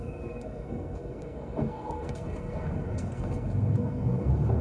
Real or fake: fake